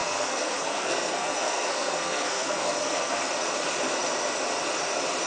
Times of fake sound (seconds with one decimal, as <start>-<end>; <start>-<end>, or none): 0.0-3.2